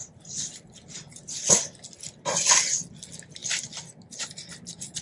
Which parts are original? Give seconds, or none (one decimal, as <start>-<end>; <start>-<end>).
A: 0.0-5.0